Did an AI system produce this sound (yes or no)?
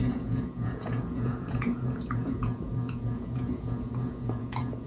yes